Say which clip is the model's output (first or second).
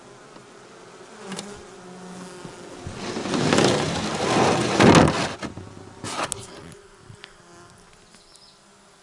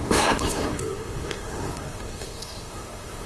second